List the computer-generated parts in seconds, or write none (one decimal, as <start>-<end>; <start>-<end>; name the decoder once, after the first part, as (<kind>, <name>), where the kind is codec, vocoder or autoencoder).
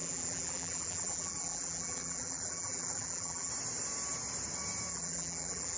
0.0-3.5 (vocoder, BigVGAN v2); 4.9-5.8